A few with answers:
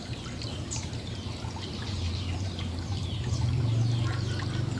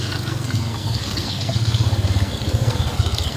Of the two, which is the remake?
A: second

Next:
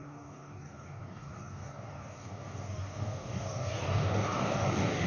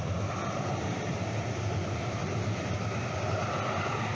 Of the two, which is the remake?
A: first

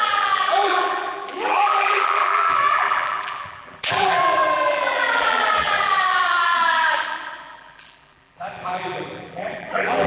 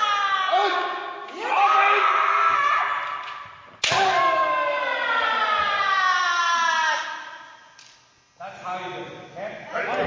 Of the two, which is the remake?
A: first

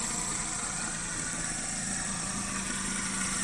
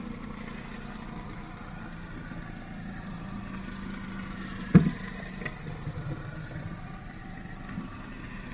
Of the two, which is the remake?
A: first